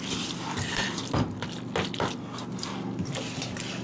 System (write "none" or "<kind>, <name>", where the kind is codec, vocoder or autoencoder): none